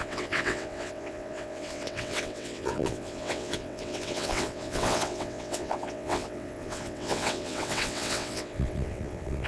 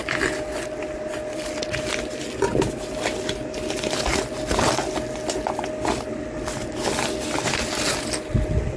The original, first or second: second